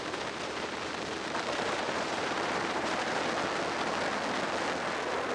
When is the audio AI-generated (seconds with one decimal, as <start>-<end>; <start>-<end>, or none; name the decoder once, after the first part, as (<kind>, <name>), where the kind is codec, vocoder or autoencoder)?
0.0-3.2 (vocoder, BigVGAN v2)